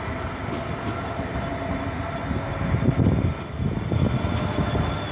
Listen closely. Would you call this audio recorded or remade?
recorded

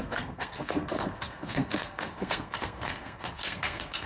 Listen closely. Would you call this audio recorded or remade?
remade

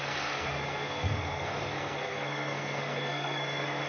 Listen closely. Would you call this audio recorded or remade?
remade